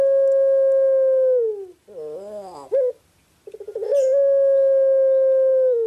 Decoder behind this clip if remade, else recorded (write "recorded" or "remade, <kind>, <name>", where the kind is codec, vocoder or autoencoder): recorded